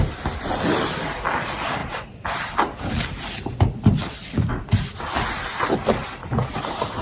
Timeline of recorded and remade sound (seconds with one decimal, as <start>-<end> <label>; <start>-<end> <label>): 0.0-6.2 recorded; 6.2-7.0 remade